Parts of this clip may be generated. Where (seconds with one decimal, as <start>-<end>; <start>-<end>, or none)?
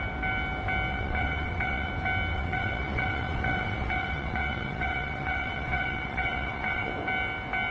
0.9-1.9; 2.3-6.9